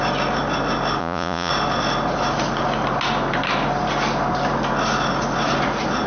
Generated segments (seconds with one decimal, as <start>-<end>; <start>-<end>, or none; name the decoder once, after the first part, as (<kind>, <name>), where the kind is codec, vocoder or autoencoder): 1.0-1.5 (vocoder, Vocos)